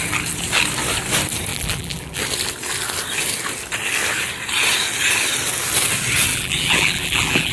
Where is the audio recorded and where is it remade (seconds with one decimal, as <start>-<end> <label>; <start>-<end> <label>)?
0.0-1.5 recorded; 1.5-2.2 remade; 2.2-6.3 recorded; 6.3-7.5 remade